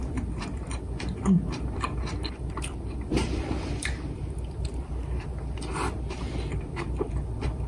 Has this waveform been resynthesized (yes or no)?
yes